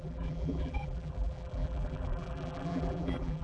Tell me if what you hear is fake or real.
fake